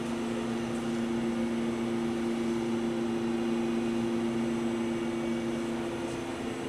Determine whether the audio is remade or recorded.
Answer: recorded